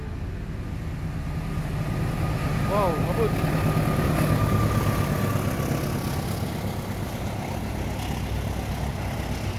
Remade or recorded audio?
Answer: recorded